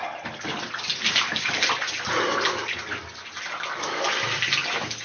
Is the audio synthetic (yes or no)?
no